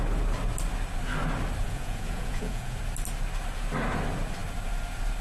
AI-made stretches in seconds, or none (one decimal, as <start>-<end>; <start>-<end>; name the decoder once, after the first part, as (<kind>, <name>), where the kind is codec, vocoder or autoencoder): 1.6-2.8 (vocoder, Vocos)